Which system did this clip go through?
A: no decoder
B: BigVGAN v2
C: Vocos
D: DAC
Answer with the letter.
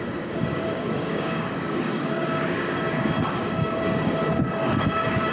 D